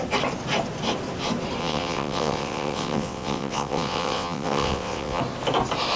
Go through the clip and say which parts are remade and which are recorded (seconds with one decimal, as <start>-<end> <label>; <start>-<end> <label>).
0.0-1.6 recorded; 1.6-5.2 remade; 5.2-6.0 recorded